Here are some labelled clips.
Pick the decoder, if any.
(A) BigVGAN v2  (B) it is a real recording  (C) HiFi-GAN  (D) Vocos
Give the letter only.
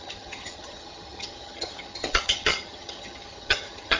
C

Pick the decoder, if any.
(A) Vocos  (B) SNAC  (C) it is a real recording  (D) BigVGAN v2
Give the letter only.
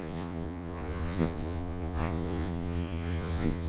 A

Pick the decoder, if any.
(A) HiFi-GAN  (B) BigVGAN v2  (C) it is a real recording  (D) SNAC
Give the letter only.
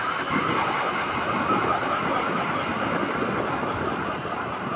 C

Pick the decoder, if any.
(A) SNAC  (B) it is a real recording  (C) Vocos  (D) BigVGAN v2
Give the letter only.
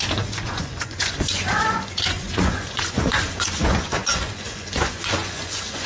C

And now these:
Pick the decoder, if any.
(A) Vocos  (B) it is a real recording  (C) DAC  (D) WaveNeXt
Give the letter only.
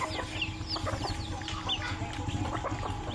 B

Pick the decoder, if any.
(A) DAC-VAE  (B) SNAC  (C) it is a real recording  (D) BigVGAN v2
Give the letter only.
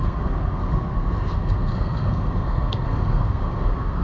B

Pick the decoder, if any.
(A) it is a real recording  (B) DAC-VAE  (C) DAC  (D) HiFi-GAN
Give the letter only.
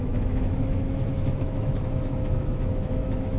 B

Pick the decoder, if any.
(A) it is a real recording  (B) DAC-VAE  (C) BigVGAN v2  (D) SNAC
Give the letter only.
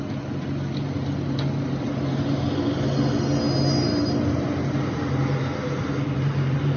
A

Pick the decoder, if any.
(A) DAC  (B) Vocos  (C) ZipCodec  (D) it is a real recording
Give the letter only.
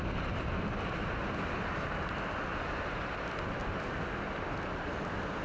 D